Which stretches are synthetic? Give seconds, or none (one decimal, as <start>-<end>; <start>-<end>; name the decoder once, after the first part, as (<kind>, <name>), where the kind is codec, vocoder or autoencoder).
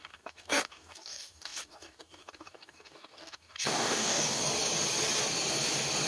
0.0-4.4 (codec, DAC)